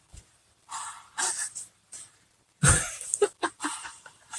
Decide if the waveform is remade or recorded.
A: remade